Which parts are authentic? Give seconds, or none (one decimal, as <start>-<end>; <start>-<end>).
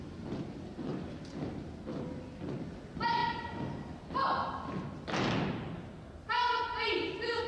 0.0-7.5